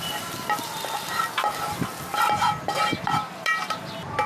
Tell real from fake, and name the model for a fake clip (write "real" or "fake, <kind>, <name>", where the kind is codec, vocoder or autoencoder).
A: real